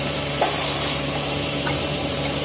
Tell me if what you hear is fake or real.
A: fake